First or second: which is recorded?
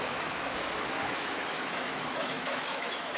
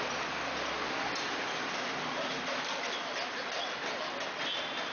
second